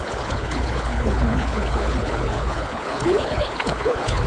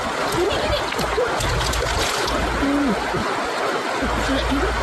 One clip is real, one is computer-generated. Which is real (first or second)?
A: second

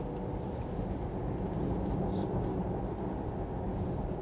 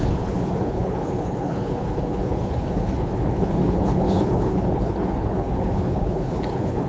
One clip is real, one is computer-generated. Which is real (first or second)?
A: first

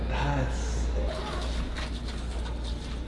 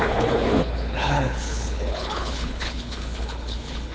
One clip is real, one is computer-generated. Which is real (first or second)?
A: first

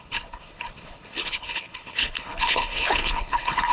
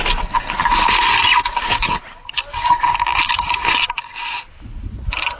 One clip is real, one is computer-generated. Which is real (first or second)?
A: second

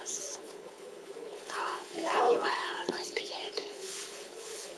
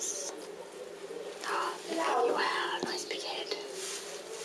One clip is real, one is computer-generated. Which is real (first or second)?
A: second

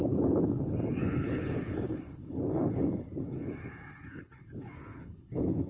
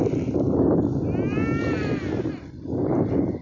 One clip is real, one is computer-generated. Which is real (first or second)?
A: second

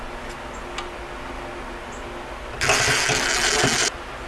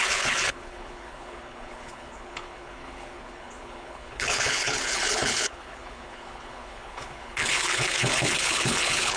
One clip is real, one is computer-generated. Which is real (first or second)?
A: first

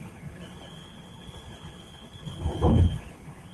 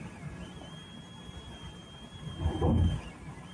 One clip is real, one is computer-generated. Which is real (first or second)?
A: second